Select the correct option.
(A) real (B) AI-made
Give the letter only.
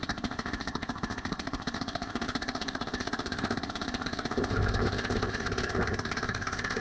B